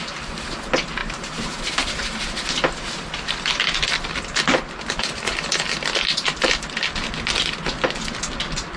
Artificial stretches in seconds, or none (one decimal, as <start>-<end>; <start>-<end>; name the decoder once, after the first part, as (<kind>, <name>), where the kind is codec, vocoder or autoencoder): 1.0-1.6 (vocoder, BigVGAN v2)